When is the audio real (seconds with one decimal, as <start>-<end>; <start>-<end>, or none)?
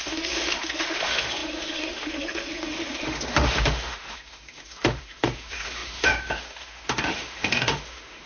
none